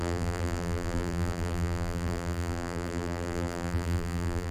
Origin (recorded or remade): remade